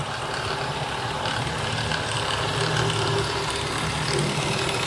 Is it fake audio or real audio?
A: real